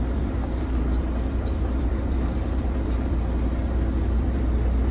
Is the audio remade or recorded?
remade